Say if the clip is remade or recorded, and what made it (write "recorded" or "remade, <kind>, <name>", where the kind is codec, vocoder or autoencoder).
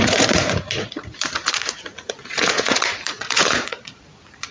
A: remade, vocoder, Vocos